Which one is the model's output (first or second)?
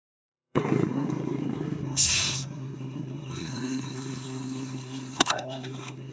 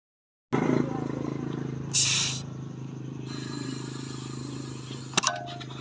first